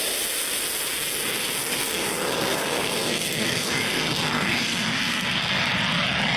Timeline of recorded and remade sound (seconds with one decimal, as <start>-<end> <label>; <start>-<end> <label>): 0.0-1.8 recorded; 1.8-5.6 remade; 5.6-6.4 recorded